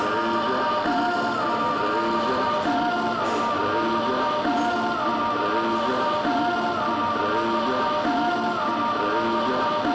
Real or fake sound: real